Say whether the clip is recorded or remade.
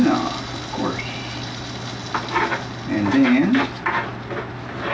recorded